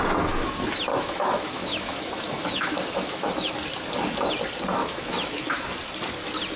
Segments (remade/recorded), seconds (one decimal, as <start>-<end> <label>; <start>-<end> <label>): 0.0-0.9 recorded; 0.9-3.5 remade; 3.5-4.8 recorded; 4.8-5.7 remade; 5.7-6.6 recorded